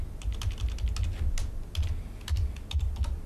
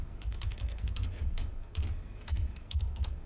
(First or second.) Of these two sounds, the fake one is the second